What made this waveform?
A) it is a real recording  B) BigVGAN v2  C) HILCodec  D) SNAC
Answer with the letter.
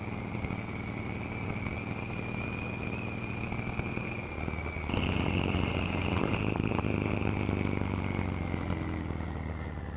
A